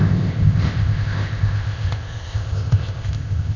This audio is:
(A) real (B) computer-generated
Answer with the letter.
B